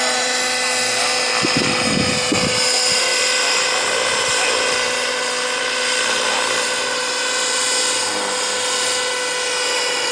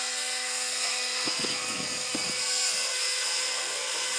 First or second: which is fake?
second